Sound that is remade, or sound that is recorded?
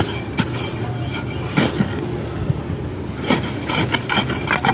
recorded